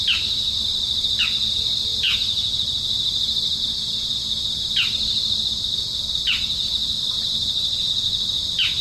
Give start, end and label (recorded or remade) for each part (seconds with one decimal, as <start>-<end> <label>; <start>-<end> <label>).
0.0-8.8 recorded